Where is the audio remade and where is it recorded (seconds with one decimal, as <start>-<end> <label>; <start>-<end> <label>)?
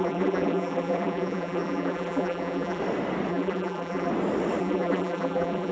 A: 0.0-2.8 remade; 2.8-3.3 recorded; 3.3-4.1 remade; 4.1-4.6 recorded; 4.6-5.7 remade